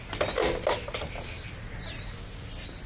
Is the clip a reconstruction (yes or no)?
no